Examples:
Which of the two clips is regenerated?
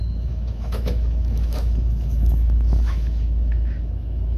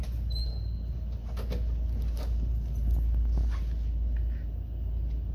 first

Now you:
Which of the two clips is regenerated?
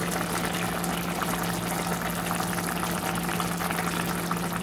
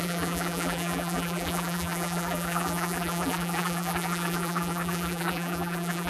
second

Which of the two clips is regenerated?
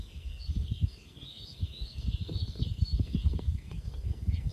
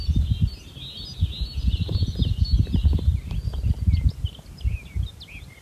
first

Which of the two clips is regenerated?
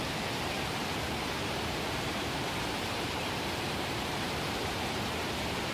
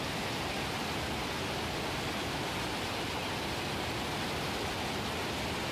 first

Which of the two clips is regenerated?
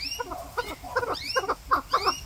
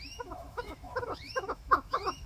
second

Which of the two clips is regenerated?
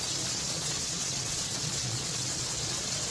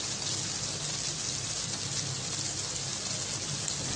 first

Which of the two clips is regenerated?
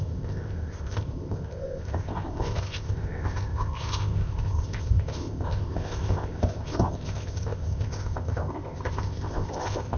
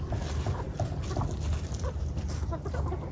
first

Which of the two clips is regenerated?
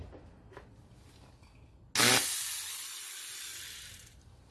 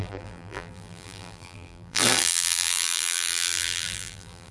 second